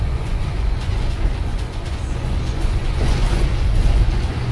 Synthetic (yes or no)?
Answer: yes